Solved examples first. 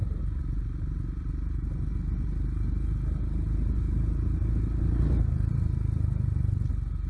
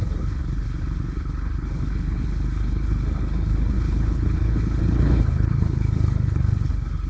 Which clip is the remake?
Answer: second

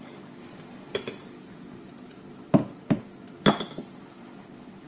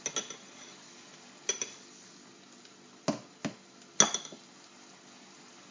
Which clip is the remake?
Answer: first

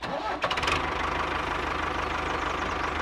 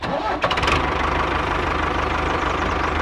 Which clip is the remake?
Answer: second